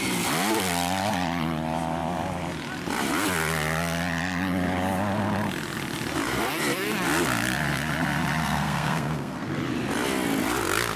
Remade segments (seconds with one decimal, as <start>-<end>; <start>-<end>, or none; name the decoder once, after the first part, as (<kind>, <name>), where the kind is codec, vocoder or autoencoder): 8.4-9.5 (codec, SNAC)